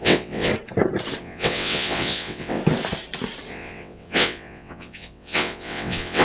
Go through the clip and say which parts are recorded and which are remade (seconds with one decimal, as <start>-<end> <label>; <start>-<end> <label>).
0.0-0.5 remade; 0.5-1.2 recorded; 1.2-2.6 remade; 2.6-3.5 recorded; 3.5-6.2 remade